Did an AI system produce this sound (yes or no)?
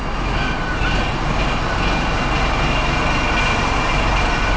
no